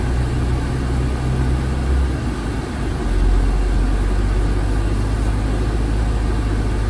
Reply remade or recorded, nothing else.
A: recorded